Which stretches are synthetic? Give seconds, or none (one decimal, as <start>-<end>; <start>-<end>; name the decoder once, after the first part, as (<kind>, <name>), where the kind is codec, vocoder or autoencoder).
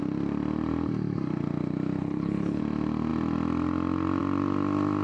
2.0-2.6 (codec, HILCodec)